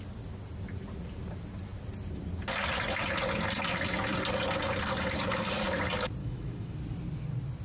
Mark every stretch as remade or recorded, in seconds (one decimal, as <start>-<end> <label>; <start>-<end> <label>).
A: 0.0-6.2 recorded; 6.2-6.7 remade; 6.7-7.6 recorded